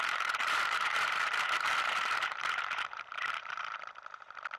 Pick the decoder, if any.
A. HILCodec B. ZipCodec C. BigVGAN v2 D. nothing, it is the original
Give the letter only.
C